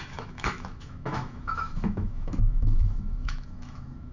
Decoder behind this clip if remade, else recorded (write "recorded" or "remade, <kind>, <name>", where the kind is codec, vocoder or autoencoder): remade, autoencoder, DAC-VAE